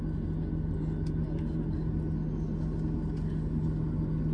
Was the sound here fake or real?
real